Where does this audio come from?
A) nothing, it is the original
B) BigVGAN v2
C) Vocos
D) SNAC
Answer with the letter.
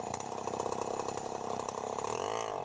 A